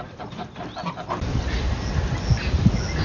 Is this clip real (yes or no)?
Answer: yes